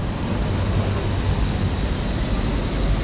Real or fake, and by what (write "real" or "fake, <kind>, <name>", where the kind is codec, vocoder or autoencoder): real